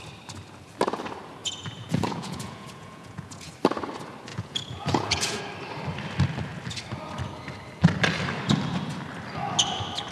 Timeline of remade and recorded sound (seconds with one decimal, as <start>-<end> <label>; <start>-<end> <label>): 0.0-1.4 recorded; 1.4-3.5 remade; 3.5-4.3 recorded; 4.3-5.4 remade; 5.4-10.1 recorded